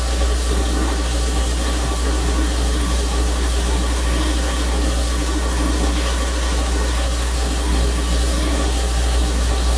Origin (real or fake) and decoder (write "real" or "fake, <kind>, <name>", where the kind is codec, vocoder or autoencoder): fake, codec, SNAC